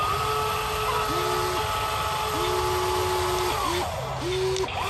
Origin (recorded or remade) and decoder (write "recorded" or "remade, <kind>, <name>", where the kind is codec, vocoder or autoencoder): recorded